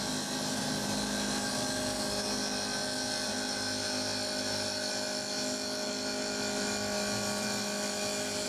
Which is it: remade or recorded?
recorded